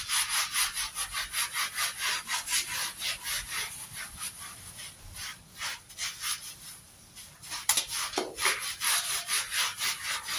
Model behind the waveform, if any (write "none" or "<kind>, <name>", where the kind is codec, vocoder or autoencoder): none